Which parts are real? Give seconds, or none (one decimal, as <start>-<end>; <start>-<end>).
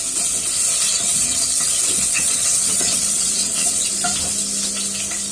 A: 0.0-0.9; 3.9-5.3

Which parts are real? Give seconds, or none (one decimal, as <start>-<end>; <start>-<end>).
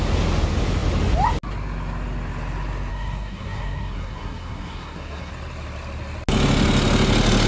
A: 0.0-2.9; 5.3-7.5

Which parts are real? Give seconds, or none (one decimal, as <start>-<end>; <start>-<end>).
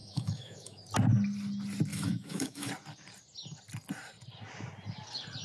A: 0.8-1.9; 2.7-5.4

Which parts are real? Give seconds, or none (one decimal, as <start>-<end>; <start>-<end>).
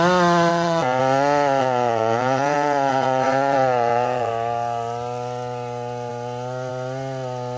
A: 0.0-0.5; 1.0-1.6; 4.3-7.6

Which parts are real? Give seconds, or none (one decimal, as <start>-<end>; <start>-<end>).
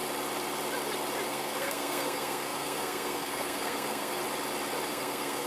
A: 0.0-1.3; 4.2-4.9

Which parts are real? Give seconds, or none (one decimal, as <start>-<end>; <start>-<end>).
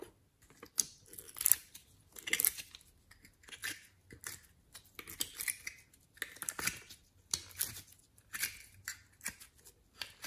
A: 0.0-10.3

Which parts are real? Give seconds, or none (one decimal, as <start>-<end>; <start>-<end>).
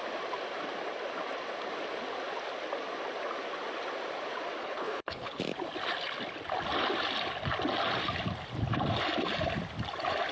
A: 0.0-4.6; 5.4-10.3